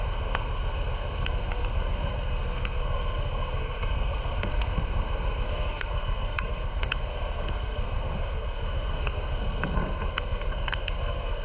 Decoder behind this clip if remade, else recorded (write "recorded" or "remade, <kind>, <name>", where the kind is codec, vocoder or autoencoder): remade, codec, SNAC